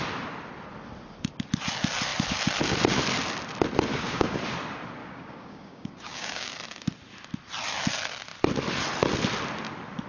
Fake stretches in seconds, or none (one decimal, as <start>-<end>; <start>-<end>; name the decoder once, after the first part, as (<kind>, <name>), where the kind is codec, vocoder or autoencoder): 3.9-4.4 (codec, DAC); 5.0-6.5